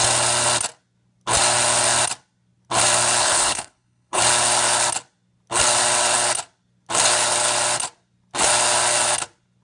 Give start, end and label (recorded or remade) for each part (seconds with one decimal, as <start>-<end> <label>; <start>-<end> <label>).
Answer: 0.0-3.2 recorded; 3.2-4.2 remade; 4.2-9.6 recorded